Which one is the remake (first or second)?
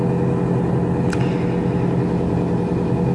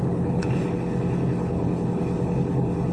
second